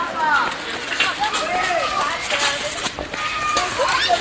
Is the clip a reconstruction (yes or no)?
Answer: no